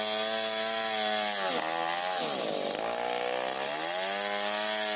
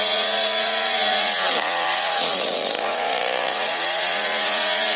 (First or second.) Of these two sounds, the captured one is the first